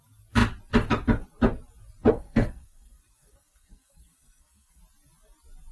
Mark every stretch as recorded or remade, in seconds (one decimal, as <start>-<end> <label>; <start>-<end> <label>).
0.0-2.1 recorded; 2.1-4.8 remade; 4.8-5.7 recorded